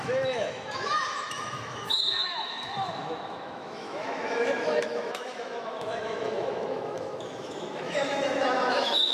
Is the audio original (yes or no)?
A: no